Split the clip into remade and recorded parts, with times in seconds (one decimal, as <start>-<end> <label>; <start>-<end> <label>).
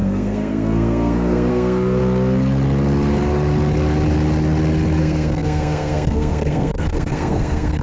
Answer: 0.0-2.0 remade; 2.0-5.0 recorded; 5.0-7.8 remade